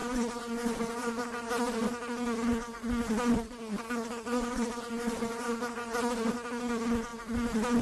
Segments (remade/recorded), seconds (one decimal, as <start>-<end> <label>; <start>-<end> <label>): 0.0-1.1 remade; 1.1-2.5 recorded; 2.5-6.3 remade; 6.3-7.8 recorded